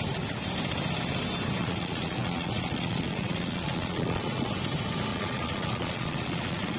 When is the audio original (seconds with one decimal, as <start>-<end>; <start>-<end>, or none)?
0.0-1.6; 4.5-5.1